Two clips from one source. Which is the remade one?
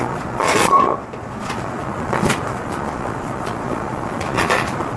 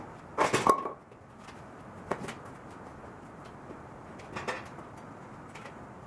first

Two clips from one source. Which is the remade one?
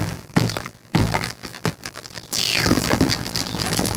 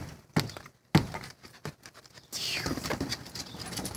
first